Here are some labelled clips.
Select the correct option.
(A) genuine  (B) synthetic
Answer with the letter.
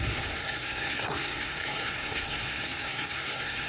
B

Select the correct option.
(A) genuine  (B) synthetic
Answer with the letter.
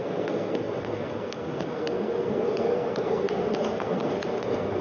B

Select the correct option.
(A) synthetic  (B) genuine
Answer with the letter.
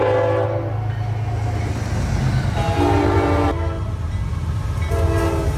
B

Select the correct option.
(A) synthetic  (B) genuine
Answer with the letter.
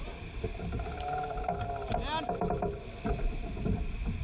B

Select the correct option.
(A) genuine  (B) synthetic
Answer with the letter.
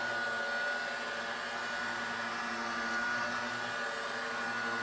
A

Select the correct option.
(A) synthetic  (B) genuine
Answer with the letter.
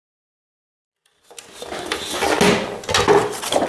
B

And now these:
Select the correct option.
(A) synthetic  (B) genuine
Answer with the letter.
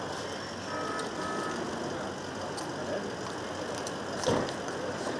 B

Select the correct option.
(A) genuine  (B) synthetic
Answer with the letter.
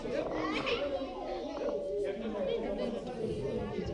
A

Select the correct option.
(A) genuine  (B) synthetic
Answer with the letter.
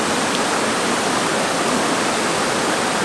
A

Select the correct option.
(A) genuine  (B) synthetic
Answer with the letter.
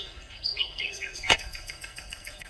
B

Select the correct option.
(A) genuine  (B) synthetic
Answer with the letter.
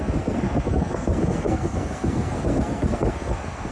B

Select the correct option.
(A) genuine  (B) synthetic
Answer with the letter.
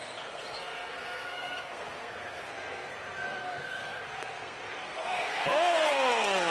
B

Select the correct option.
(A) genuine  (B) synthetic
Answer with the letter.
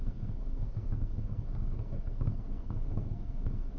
B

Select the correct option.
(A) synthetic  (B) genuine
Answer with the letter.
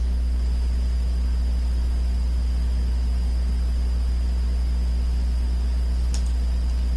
B